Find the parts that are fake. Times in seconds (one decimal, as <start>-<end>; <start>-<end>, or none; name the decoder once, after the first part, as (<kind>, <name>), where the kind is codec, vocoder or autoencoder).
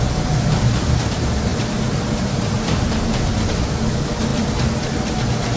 1.5-3.1 (vocoder, BigVGAN v2)